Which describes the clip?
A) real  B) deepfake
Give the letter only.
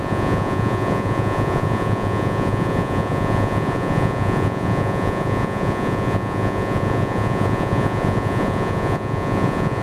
B